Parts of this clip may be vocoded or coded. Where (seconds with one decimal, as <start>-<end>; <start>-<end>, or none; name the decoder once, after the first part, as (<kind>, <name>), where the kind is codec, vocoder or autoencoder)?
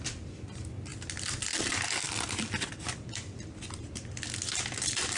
0.9-2.7 (vocoder, BigVGAN v2)